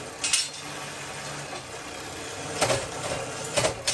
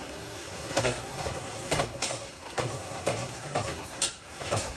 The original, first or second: first